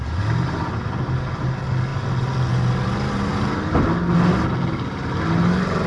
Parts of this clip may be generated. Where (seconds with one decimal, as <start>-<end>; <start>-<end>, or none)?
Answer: none